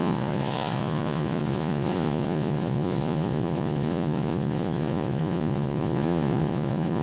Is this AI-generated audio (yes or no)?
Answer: yes